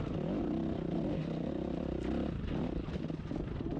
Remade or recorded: recorded